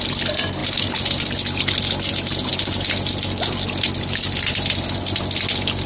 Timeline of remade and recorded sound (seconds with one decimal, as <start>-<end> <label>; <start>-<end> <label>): 0.0-5.9 recorded

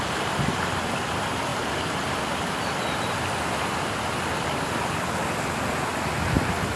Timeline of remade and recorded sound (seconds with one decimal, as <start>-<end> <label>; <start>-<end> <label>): 0.0-6.8 recorded

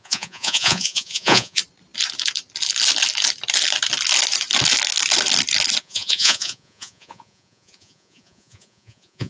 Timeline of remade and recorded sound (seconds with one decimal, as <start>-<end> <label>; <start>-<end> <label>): 0.0-1.6 remade; 1.6-5.8 recorded; 5.8-9.3 remade

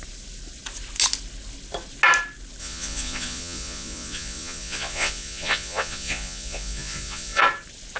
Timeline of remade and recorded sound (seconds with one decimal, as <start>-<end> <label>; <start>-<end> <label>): 0.0-2.6 recorded; 2.6-7.4 remade; 7.4-8.0 recorded

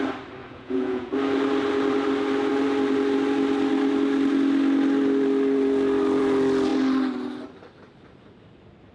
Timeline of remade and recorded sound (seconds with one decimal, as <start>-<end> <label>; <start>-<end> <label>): 0.0-0.4 recorded; 0.4-1.1 remade; 1.1-8.9 recorded

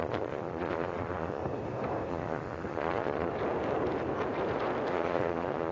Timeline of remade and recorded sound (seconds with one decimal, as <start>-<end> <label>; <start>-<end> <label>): 0.0-1.4 remade; 1.4-2.1 recorded; 2.1-3.3 remade; 3.3-4.9 recorded; 4.9-5.7 remade

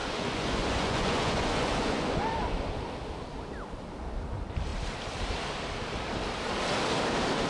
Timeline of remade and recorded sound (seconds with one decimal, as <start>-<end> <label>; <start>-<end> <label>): 0.0-2.2 remade; 2.2-7.5 recorded

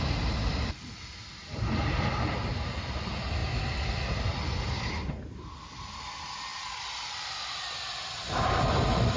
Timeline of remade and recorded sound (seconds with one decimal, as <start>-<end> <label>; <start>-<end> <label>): 0.0-9.2 recorded